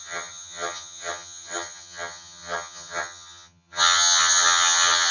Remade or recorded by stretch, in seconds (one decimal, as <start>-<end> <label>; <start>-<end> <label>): 0.0-5.1 remade